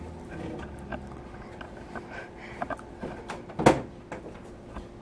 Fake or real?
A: real